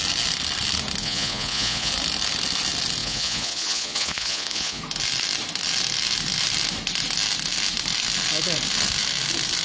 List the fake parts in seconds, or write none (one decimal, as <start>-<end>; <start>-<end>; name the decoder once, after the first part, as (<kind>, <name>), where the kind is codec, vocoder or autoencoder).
1.0-1.9 (vocoder, Vocos); 3.0-4.8